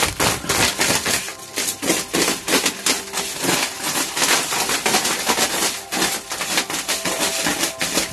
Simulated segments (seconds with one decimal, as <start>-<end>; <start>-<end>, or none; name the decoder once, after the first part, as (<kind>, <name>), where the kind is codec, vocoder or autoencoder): none